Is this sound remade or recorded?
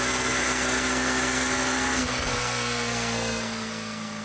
remade